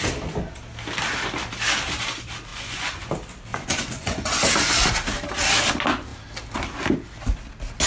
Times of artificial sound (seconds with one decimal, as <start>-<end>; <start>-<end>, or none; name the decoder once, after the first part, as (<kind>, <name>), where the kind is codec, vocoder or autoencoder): 2.5-3.1 (vocoder, Vocos); 3.5-4.4